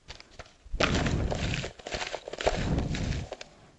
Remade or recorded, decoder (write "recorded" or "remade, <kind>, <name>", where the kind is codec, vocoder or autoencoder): recorded